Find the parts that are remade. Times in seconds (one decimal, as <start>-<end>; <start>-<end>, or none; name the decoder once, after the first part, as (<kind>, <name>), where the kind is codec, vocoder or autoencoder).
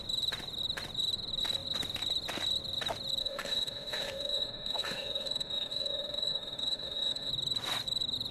3.2-7.3 (autoencoder, DAC-VAE)